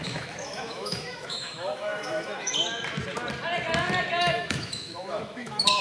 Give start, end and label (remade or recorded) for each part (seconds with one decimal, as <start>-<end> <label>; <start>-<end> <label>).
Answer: 0.0-2.5 remade; 2.5-4.2 recorded; 4.2-5.8 remade